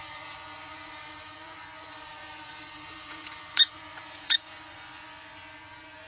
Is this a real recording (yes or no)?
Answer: no